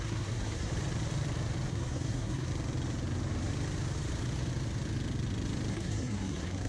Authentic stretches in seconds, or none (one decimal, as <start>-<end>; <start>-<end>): 0.7-1.7; 2.5-5.7